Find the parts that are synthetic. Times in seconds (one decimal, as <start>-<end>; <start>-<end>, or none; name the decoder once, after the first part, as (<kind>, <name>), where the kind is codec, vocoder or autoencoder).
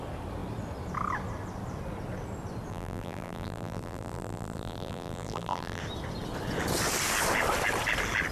2.7-5.8 (vocoder, BigVGAN v2)